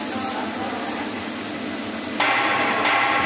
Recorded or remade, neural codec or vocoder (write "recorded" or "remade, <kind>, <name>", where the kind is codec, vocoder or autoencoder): recorded